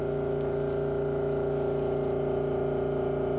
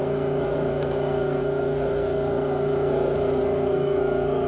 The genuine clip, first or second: first